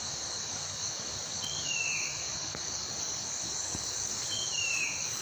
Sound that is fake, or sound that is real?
fake